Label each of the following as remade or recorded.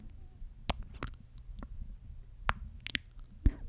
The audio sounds recorded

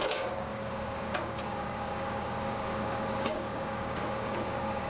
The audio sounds remade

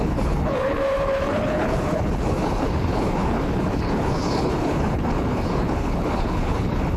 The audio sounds remade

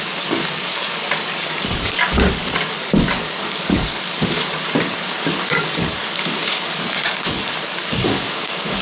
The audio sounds remade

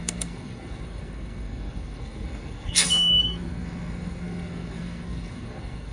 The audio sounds remade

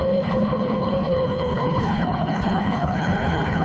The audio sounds remade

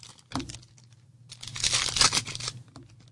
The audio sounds recorded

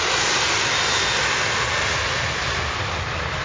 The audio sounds recorded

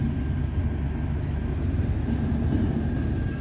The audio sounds recorded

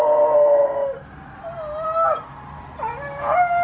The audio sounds recorded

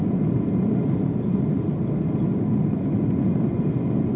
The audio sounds recorded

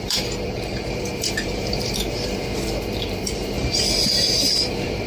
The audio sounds remade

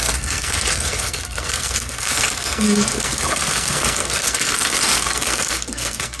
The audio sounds remade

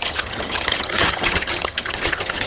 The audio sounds remade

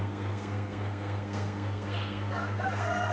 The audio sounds remade